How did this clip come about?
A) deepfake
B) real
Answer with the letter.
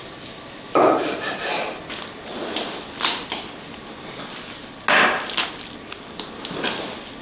B